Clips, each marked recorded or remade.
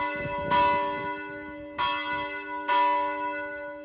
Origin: recorded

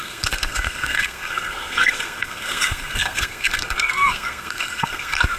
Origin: remade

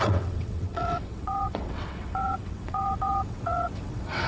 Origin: remade